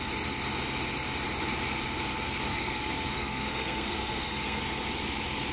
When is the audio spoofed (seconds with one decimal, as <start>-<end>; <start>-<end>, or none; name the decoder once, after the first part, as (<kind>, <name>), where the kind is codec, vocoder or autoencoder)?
2.5-4.6 (codec, SNAC)